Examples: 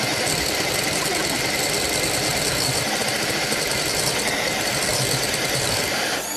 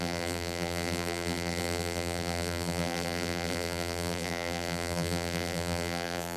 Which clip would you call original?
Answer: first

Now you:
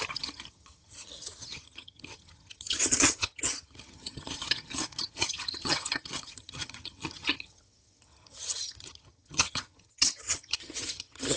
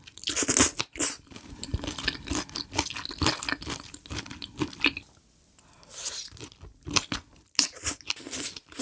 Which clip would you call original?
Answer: second